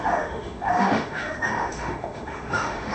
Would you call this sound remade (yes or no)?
yes